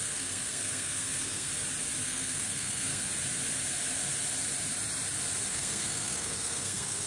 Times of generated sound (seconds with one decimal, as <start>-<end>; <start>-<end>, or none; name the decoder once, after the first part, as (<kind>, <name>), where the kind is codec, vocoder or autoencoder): 0.0-1.5 (codec, SNAC); 2.0-3.1; 5.5-7.1